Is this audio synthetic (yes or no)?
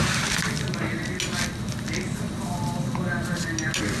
no